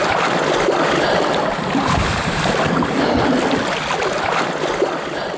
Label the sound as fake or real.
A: real